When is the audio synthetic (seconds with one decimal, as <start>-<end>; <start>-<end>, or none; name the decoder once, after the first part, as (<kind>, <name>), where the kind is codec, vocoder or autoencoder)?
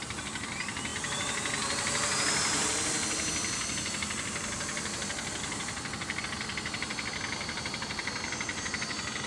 none